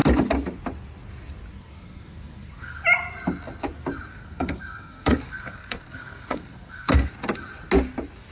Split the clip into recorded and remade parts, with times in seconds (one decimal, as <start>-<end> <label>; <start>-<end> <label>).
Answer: 0.0-1.5 recorded; 1.5-2.8 remade; 2.8-4.1 recorded; 4.1-7.1 remade; 7.1-8.3 recorded